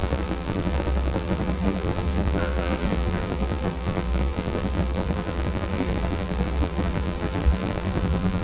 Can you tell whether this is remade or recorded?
remade